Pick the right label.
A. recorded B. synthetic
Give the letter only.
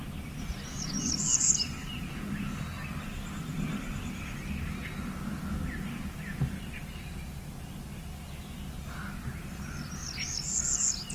A